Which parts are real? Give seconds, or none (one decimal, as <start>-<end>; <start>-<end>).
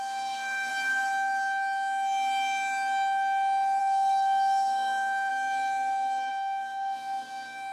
0.7-3.8; 5.3-6.3